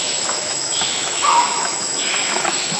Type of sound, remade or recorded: remade